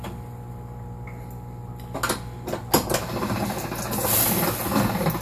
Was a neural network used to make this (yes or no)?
no